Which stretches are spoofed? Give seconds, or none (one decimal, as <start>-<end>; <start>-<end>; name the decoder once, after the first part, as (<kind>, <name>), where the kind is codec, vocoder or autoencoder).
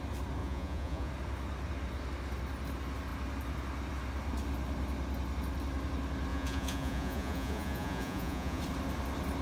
0.4-1.1 (vocoder, Vocos); 6.3-8.6